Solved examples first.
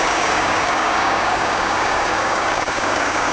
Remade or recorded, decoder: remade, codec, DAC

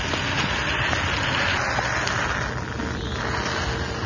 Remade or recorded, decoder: recorded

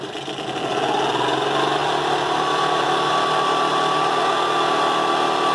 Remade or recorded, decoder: recorded